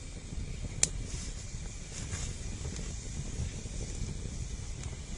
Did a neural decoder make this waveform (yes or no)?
no